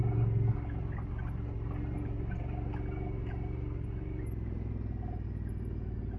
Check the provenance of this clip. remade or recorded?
recorded